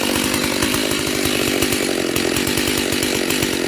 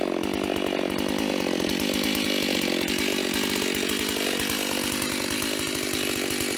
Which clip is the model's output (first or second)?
first